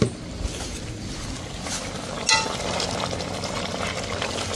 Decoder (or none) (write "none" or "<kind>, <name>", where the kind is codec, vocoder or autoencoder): none